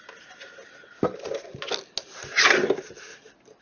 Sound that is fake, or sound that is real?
real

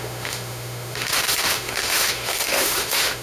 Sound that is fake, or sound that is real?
fake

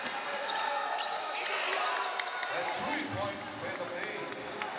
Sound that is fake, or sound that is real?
real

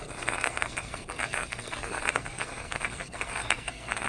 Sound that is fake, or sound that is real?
fake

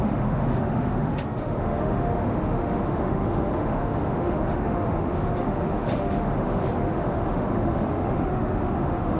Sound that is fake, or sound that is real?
fake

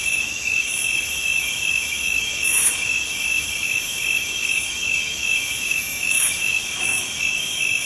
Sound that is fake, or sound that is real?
fake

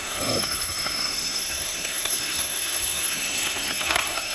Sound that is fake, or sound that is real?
fake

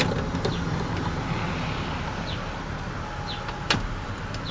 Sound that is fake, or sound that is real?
real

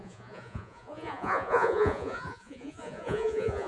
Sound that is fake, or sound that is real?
fake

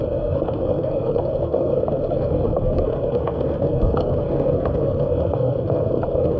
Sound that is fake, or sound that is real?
fake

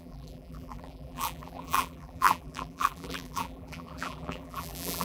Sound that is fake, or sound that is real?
fake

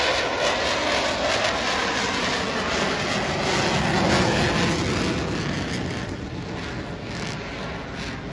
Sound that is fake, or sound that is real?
real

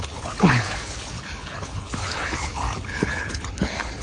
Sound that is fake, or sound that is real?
fake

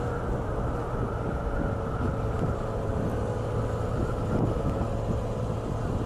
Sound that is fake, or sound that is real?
real